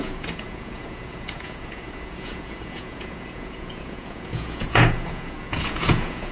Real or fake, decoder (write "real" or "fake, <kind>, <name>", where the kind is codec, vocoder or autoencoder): fake, vocoder, Vocos